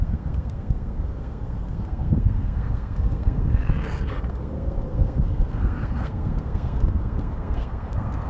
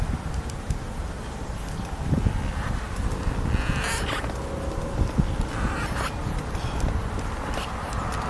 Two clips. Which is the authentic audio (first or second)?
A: second